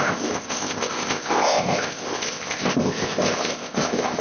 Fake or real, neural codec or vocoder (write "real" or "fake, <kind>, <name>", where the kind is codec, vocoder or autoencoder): fake, codec, ZipCodec